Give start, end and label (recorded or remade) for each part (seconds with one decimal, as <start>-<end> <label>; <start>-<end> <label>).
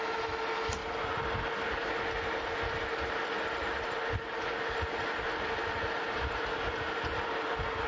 0.0-7.9 recorded